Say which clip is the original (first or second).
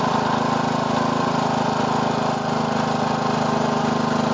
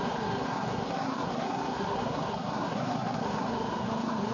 first